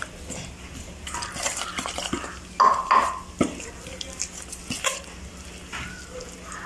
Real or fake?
real